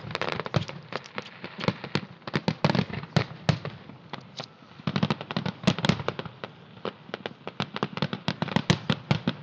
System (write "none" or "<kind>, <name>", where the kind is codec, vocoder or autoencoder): none